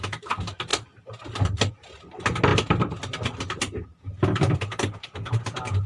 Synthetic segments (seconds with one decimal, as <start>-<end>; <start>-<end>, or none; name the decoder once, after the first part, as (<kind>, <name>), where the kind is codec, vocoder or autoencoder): none